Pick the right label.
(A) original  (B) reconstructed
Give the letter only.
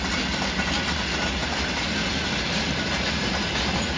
A